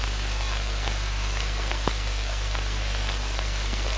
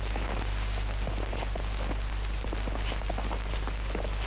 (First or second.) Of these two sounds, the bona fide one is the second